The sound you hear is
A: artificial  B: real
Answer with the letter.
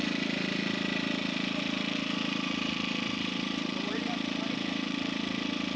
A